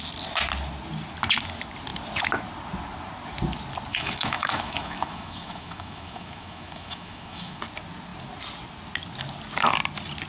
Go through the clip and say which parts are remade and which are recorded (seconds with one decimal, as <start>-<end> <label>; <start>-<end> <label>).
0.0-3.9 recorded; 3.9-7.6 remade; 7.6-10.3 recorded

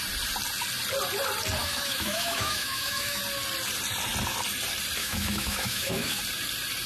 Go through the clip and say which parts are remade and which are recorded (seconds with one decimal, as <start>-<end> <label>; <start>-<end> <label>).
0.0-1.6 recorded; 1.6-3.2 remade; 3.2-5.0 recorded; 5.0-6.2 remade; 6.2-6.9 recorded

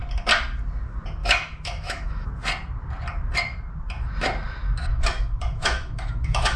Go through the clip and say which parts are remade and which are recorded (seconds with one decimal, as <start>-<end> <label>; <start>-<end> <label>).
0.0-1.2 recorded; 1.2-2.3 remade; 2.3-4.9 recorded; 4.9-6.6 remade

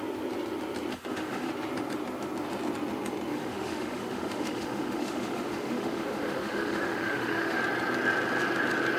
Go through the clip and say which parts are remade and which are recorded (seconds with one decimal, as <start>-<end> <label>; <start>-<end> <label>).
0.0-0.9 recorded; 0.9-1.5 remade; 1.5-3.3 recorded; 3.3-7.6 remade; 7.6-9.0 recorded

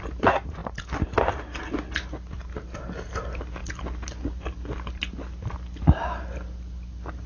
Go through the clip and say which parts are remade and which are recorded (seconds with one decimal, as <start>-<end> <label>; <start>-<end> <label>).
0.0-7.3 recorded

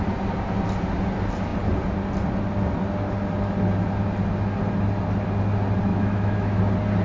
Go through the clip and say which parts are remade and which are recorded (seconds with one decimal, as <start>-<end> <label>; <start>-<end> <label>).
0.0-5.9 recorded; 5.9-6.6 remade; 6.6-7.0 recorded

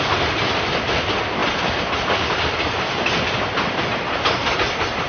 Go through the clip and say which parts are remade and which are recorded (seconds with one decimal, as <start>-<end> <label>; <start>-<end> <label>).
0.0-5.1 recorded

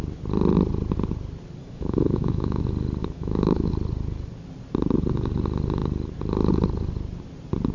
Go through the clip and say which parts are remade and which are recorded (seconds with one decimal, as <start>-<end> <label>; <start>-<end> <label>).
0.0-1.6 recorded; 1.6-2.6 remade; 2.6-3.0 recorded; 3.0-3.7 remade; 3.7-7.7 recorded